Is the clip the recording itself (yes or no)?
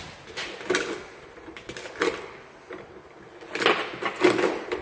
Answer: yes